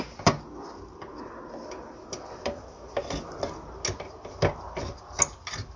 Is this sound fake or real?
real